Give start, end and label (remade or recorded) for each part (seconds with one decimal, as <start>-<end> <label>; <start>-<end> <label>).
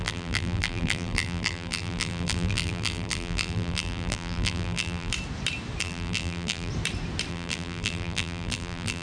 0.0-5.1 remade; 5.1-5.8 recorded; 5.8-6.7 remade; 6.7-7.3 recorded; 7.3-9.0 remade